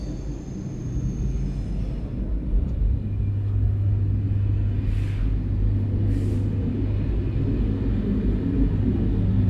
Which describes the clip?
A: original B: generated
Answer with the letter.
A